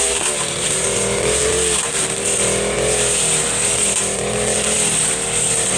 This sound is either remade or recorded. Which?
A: recorded